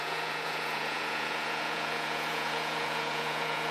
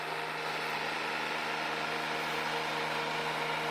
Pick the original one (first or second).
second